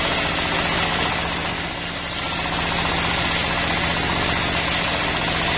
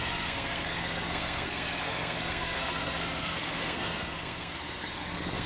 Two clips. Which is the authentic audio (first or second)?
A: first